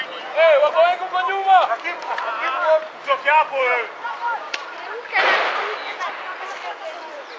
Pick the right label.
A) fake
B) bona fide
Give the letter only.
B